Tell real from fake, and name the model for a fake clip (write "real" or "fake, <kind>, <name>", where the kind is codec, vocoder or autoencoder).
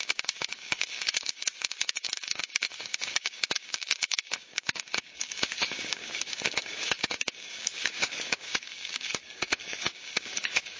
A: fake, codec, DAC